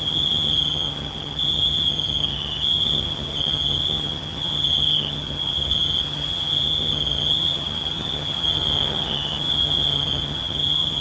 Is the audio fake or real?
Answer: fake